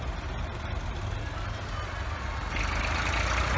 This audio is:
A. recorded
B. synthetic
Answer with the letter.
A